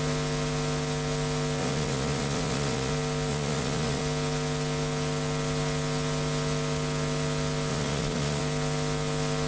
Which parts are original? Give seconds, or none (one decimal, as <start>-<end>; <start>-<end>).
0.0-1.6; 2.9-3.3; 4.0-7.7; 8.4-9.5